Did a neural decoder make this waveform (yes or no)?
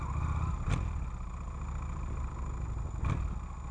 no